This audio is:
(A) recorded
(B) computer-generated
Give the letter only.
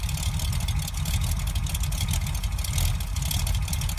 A